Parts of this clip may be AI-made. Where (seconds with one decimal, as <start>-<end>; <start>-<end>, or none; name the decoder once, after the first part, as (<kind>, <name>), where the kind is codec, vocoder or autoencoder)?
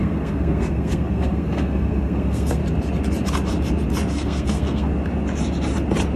0.0-2.6 (codec, SNAC); 4.1-4.9